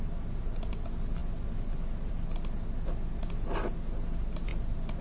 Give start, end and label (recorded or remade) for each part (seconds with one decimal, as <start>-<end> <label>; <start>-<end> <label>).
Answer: 0.0-5.0 recorded